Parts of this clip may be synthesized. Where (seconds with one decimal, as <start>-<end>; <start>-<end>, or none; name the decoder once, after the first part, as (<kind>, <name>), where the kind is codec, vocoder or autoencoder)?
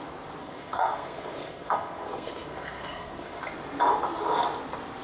0.4-3.4 (codec, SNAC)